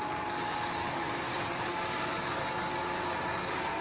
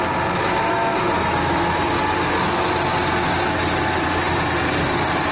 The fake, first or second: first